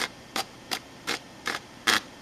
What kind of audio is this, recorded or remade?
remade